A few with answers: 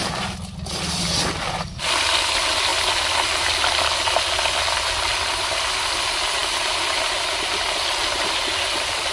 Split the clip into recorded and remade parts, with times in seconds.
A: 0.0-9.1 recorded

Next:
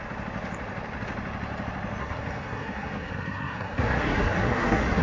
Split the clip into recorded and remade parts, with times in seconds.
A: 0.0-2.0 recorded; 2.0-5.0 remade

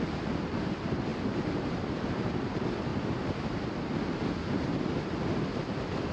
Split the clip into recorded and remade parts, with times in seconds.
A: 0.0-1.1 remade; 1.1-1.9 recorded; 1.9-2.9 remade; 2.9-5.2 recorded; 5.2-6.1 remade